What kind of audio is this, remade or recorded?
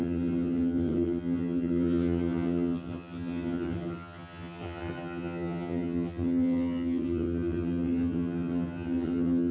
remade